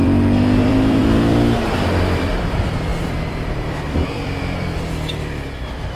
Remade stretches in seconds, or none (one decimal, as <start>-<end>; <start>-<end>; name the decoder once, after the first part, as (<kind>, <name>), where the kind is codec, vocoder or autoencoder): 0.0-6.0 (vocoder, BigVGAN v2)